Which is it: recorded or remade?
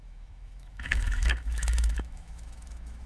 remade